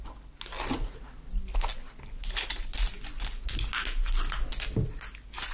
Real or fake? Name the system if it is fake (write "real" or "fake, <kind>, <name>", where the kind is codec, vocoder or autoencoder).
real